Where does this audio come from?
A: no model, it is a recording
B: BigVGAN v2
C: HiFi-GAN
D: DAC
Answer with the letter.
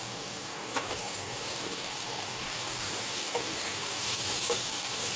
D